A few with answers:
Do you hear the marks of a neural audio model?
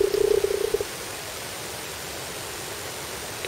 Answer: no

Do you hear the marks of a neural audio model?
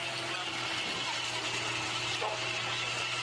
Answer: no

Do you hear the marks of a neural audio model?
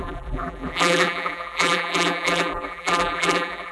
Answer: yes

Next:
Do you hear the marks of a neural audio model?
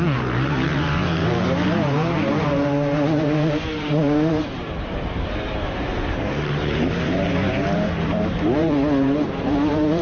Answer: yes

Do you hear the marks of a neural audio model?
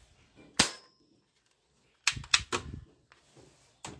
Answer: no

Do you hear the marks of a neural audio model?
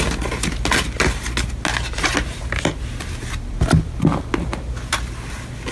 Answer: no